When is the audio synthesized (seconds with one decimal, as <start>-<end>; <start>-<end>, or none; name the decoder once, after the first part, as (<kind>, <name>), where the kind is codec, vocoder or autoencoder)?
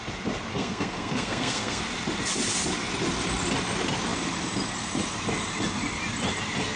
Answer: 0.5-1.8 (codec, SNAC)